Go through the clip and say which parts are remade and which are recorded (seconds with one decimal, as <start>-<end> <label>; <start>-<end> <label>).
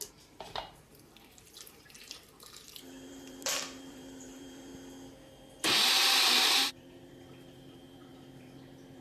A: 0.0-4.7 remade; 4.7-6.3 recorded; 6.3-9.0 remade